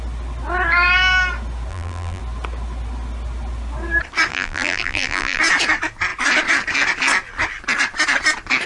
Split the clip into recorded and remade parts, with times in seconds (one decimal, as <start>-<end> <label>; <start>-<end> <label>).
0.0-1.7 recorded; 1.7-2.2 remade; 2.2-4.3 recorded; 4.3-5.4 remade; 5.4-8.7 recorded